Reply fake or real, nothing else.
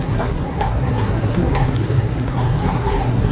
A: fake